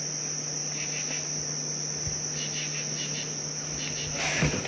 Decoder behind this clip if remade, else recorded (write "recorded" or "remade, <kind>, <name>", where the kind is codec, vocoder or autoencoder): recorded